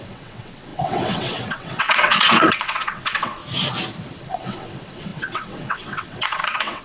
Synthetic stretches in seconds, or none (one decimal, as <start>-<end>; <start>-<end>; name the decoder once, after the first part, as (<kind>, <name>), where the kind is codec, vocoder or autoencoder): 0.0-3.4 (vocoder, WaveNeXt); 4.2-6.8